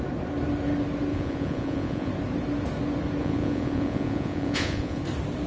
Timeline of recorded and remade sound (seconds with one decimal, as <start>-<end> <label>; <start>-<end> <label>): 0.0-1.1 recorded; 1.1-2.1 remade; 2.1-3.2 recorded; 3.2-5.0 remade; 5.0-5.5 recorded